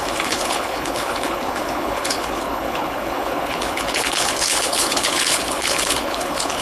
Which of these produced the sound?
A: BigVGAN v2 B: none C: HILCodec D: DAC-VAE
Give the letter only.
C